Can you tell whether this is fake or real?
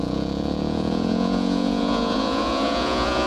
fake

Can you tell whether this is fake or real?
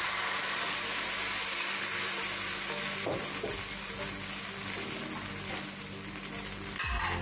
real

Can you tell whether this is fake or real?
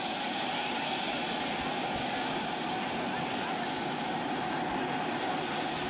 real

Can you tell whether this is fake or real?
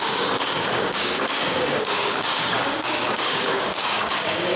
fake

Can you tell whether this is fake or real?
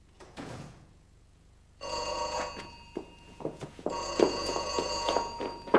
fake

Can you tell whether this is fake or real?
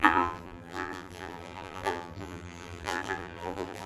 fake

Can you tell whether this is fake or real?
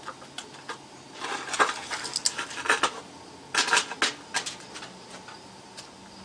real